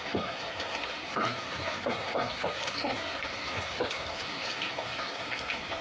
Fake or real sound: fake